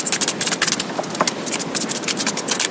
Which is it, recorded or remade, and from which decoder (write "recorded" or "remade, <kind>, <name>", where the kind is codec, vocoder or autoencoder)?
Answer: recorded